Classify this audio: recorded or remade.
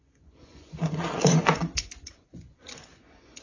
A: remade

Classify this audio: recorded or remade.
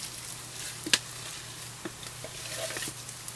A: recorded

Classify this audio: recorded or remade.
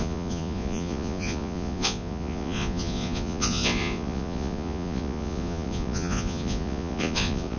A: remade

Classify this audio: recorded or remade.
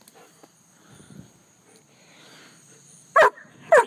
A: recorded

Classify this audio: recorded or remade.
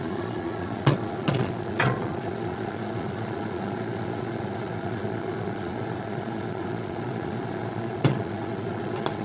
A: remade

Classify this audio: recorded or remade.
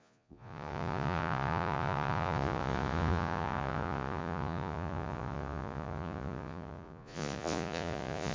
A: remade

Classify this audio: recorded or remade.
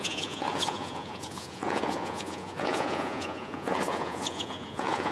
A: remade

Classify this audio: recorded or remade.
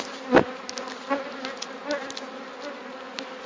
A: recorded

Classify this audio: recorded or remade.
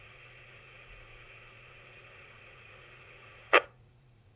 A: remade